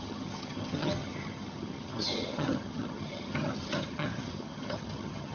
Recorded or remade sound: remade